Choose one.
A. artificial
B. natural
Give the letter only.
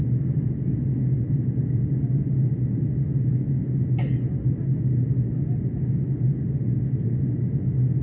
B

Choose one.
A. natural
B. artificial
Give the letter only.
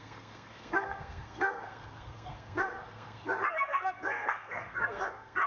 B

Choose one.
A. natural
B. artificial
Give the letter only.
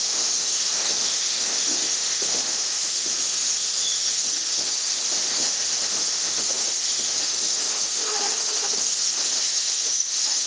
B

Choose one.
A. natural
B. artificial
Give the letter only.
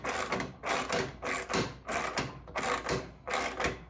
A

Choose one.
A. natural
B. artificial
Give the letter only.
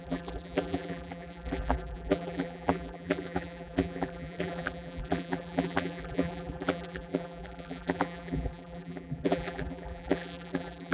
B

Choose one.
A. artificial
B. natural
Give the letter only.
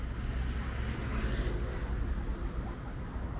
B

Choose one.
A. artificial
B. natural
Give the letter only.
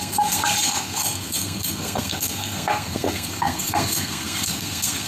A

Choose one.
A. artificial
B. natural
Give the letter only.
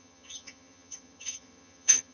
A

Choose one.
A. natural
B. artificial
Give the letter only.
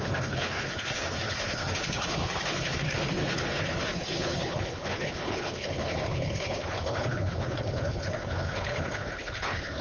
B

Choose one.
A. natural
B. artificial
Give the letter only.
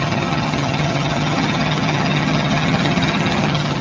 B